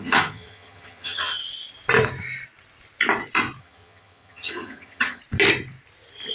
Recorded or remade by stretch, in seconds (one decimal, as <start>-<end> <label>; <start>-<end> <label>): 0.0-1.4 remade; 1.4-3.6 recorded; 3.6-5.2 remade; 5.2-6.3 recorded